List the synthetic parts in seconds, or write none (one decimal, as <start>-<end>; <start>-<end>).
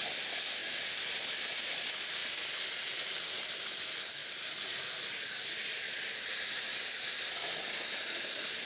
none